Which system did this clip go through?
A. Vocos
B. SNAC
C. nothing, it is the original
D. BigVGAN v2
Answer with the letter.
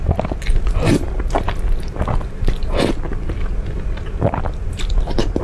C